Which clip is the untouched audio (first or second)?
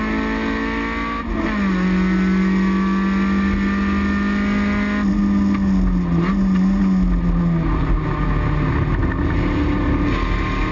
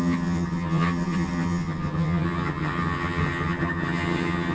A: first